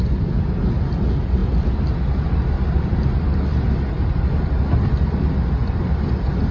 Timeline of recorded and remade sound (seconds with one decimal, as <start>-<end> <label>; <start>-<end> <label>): 0.0-6.5 recorded